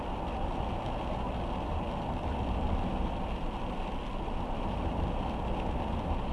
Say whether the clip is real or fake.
real